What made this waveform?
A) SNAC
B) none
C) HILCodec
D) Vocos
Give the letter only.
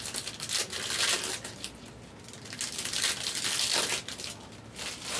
B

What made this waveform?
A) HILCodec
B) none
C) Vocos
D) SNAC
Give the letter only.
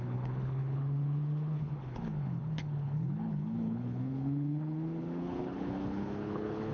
A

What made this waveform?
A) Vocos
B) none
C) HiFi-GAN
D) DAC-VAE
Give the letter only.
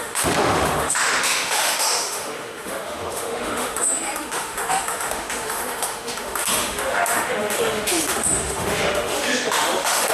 D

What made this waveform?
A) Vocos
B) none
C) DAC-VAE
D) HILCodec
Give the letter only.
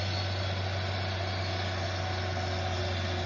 B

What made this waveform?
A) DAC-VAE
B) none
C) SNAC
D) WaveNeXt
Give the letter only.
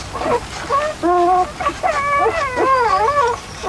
B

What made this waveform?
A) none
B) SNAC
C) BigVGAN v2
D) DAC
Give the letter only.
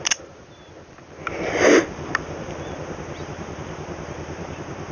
A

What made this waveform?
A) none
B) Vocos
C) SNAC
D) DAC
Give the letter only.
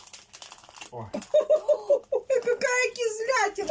A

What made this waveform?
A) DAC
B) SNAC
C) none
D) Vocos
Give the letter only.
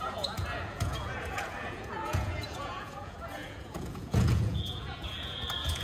D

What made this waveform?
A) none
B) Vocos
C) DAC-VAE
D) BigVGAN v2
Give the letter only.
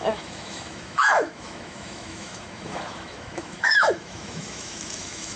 C